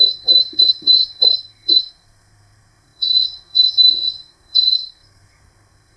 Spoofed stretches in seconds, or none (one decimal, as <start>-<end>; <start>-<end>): 0.0-6.0